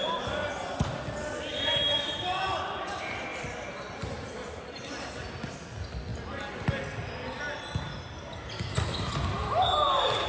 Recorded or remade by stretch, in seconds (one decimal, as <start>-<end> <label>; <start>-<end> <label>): 0.0-10.3 recorded